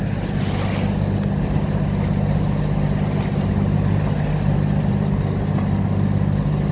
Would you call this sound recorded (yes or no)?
yes